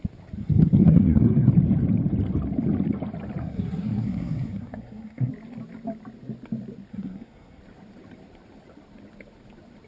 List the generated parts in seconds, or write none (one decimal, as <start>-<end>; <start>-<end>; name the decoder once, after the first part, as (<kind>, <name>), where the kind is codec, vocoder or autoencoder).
0.4-1.5 (codec, SNAC); 3.4-5.3; 6.9-7.6